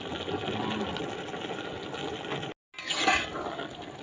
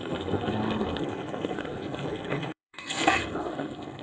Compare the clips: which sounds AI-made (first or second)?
second